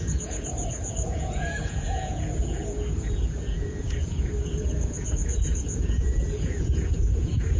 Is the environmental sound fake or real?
fake